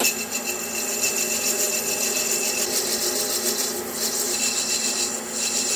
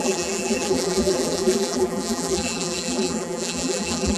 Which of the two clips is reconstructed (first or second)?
second